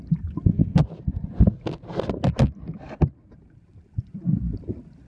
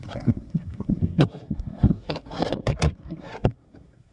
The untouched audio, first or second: first